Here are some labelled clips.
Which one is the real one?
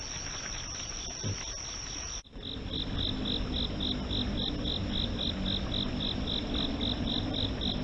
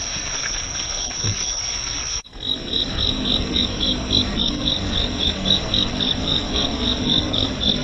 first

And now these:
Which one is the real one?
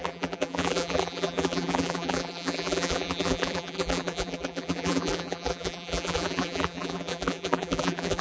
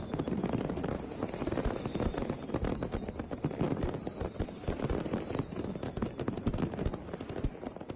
second